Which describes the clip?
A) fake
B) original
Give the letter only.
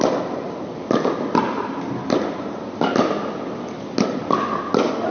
B